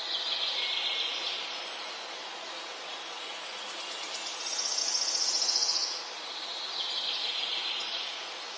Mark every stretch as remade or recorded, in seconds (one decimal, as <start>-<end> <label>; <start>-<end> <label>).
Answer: 0.0-2.2 recorded; 2.2-3.8 remade; 3.8-4.8 recorded; 4.8-6.0 remade; 6.0-7.9 recorded; 7.9-8.6 remade